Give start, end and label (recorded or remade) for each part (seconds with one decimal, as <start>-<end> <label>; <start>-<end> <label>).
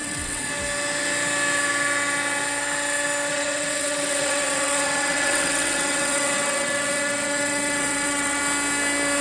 0.0-0.5 remade; 0.5-3.3 recorded; 3.3-8.4 remade; 8.4-9.2 recorded